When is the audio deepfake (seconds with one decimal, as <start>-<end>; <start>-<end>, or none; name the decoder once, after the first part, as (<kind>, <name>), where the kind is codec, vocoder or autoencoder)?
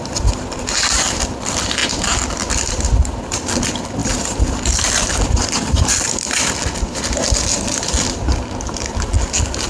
1.8-3.6 (vocoder, BigVGAN v2); 4.0-6.4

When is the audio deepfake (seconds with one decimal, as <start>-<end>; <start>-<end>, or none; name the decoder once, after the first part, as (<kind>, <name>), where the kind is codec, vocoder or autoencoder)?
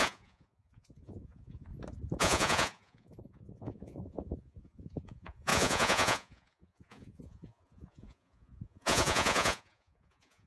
0.0-1.7 (vocoder, Vocos); 2.2-10.5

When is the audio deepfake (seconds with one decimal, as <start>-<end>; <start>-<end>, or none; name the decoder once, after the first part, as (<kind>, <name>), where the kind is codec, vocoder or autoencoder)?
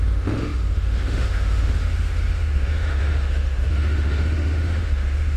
0.0-5.4 (autoencoder, DAC-VAE)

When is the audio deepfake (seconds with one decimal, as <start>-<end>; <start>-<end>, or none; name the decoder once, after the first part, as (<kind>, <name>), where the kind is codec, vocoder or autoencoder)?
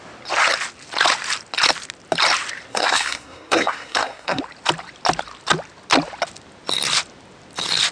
2.7-4.4 (codec, SNAC)